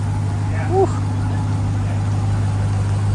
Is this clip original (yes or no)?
yes